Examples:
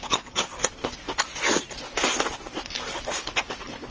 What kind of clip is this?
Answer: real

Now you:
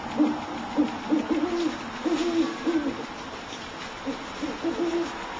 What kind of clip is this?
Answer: real